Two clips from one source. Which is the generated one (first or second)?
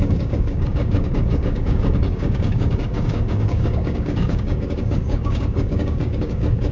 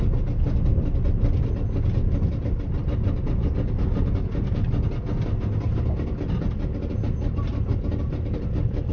first